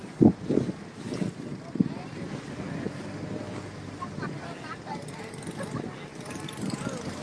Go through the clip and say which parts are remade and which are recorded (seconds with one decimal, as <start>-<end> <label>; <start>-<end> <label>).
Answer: 0.0-6.1 recorded; 6.1-6.8 remade; 6.8-7.2 recorded